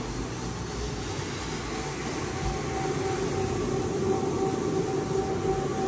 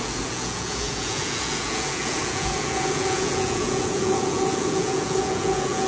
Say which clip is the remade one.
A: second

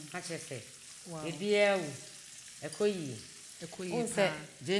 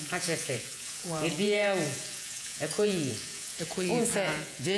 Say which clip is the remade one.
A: second